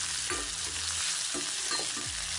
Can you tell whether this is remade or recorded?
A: recorded